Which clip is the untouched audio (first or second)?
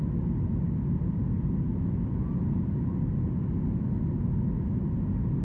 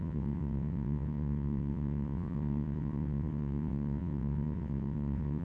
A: first